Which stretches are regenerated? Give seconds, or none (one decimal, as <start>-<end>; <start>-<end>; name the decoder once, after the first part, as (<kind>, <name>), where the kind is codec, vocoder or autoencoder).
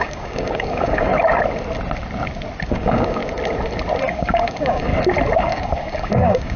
0.0-1.1 (codec, DAC); 2.7-3.2; 4.1-4.9; 5.4-6.6